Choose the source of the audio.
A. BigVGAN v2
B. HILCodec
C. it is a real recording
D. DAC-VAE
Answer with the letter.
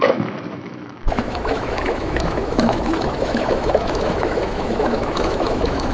D